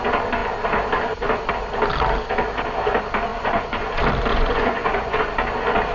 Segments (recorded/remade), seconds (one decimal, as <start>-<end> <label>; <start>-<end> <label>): 0.0-3.3 recorded; 3.3-3.9 remade; 3.9-4.3 recorded; 4.3-5.2 remade; 5.2-5.9 recorded